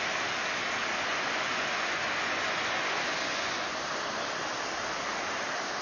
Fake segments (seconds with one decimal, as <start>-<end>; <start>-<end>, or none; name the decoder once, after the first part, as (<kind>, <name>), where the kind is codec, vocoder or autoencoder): 1.1-3.9 (vocoder, Vocos)